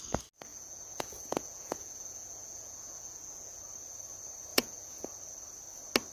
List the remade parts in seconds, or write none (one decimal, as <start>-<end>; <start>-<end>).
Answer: 0.5-3.6; 4.5-5.2